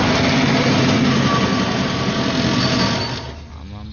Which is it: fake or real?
real